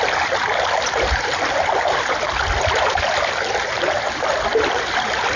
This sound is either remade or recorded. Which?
recorded